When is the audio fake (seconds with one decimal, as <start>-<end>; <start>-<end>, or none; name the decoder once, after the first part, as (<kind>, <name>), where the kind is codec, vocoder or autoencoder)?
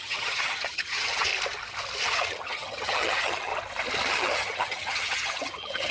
0.0-1.3 (vocoder, HiFi-GAN); 2.0-3.5; 4.1-5.9